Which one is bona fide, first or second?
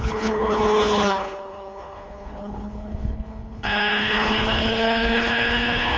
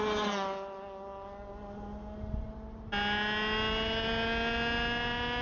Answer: second